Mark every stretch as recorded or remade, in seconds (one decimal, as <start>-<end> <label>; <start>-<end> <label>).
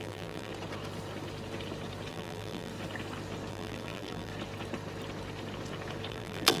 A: 0.0-0.5 remade; 0.5-2.1 recorded; 2.1-2.7 remade; 2.7-3.5 recorded; 3.5-4.3 remade; 4.3-6.1 recorded; 6.1-6.6 remade